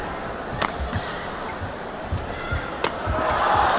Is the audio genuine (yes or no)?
yes